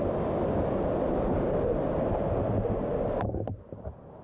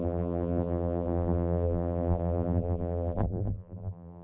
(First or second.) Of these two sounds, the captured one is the first